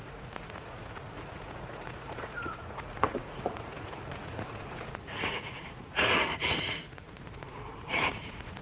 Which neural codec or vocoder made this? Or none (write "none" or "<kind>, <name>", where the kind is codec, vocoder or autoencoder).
vocoder, Vocos